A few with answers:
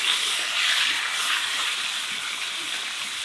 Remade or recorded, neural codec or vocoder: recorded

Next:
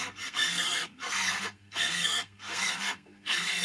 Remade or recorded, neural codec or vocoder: remade, codec, SNAC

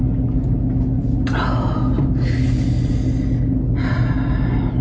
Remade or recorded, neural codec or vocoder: recorded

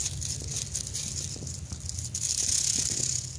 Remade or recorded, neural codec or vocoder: recorded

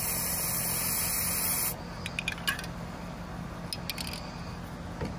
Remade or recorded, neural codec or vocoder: recorded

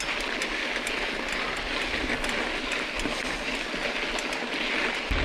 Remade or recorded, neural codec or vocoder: recorded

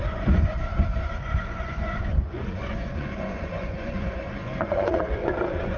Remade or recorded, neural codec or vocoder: remade, vocoder, Vocos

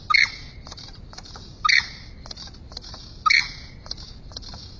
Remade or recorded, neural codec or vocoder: recorded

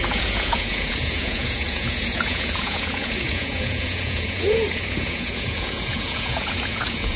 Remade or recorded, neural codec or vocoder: remade, vocoder, Vocos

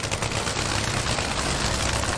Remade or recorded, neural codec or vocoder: recorded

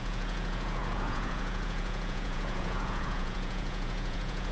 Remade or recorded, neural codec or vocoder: remade, vocoder, Vocos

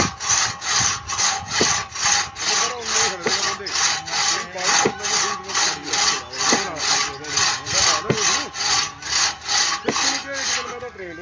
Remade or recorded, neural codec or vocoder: recorded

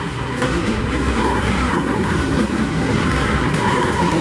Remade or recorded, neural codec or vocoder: remade, codec, SNAC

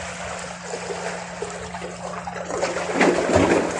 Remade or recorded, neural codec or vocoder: recorded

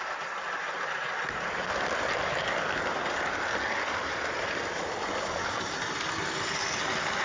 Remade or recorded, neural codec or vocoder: recorded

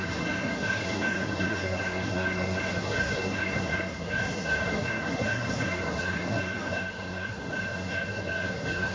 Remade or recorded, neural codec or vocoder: remade, codec, SNAC